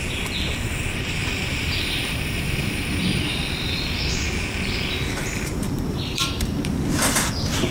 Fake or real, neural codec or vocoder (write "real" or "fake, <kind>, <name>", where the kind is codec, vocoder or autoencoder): fake, vocoder, BigVGAN v2